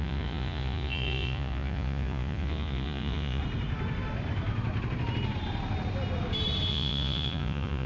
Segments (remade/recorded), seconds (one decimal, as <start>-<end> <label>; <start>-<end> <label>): 0.0-3.4 remade; 3.4-6.7 recorded; 6.7-7.9 remade